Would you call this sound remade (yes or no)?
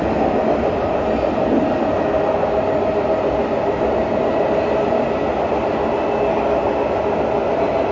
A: no